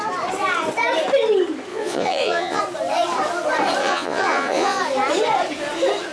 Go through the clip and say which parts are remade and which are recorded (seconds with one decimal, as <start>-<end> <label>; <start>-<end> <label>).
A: 0.0-1.7 recorded; 1.7-2.6 remade; 2.6-3.8 recorded; 3.8-4.8 remade; 4.8-6.1 recorded